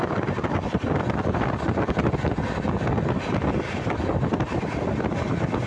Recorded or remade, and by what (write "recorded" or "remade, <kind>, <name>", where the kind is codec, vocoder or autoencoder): recorded